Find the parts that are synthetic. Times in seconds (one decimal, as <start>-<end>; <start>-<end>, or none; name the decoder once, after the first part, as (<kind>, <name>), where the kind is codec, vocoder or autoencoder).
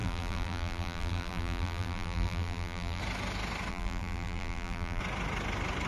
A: 0.0-3.0 (vocoder, BigVGAN v2); 3.7-5.0